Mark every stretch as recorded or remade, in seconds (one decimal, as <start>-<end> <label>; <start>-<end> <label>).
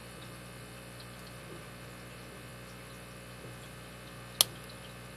0.0-1.4 remade; 1.4-5.2 recorded